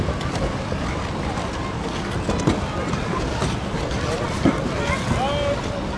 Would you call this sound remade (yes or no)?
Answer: no